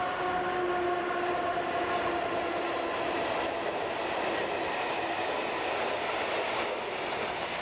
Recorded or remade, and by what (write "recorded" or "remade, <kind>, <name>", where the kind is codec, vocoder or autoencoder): recorded